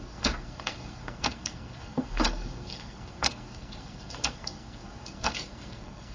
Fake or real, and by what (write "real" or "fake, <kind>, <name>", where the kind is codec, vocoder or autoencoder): fake, codec, SNAC